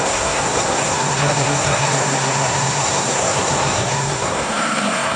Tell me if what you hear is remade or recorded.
remade